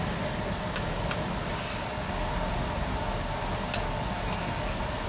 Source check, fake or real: real